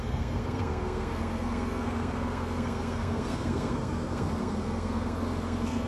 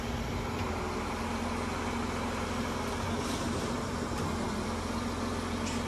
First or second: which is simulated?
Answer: first